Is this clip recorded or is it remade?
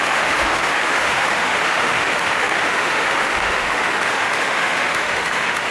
remade